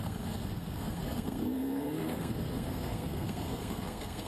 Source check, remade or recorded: remade